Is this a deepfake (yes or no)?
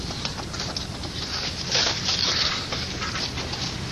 no